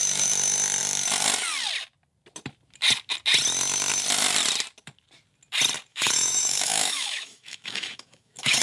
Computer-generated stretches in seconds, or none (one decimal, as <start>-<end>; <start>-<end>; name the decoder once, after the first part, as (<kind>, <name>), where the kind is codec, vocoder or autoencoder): 5.9-8.6 (autoencoder, DAC-VAE)